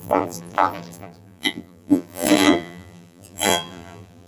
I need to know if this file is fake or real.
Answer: fake